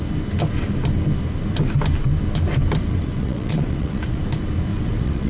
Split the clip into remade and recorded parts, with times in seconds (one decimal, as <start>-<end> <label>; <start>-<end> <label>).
0.0-2.8 recorded; 2.8-4.2 remade; 4.2-4.7 recorded; 4.7-5.3 remade